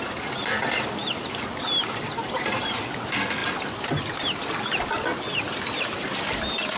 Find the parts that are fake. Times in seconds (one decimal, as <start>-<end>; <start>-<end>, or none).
2.2-2.8